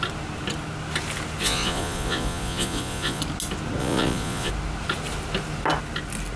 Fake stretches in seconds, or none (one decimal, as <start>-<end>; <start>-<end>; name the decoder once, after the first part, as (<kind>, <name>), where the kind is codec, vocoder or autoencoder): 1.4-3.2 (vocoder, Vocos); 3.8-4.5